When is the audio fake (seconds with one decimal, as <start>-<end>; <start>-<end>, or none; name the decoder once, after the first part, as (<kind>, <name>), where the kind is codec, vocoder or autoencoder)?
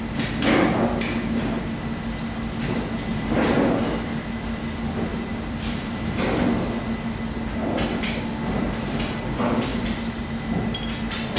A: 3.1-3.8 (vocoder, BigVGAN v2); 5.1-6.1